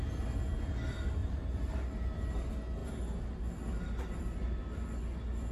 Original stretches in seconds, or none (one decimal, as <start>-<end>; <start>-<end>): 0.0-1.2; 2.4-5.5